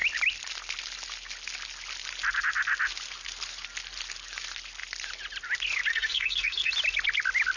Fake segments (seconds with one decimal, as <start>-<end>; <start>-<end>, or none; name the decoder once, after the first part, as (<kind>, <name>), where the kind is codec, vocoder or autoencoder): 5.9-6.7 (codec, SNAC)